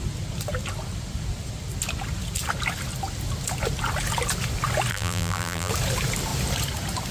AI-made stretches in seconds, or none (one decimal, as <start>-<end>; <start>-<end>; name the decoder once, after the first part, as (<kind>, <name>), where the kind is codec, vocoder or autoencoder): 4.9-5.7 (vocoder, BigVGAN v2)